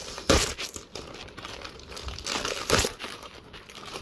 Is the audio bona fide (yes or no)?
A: no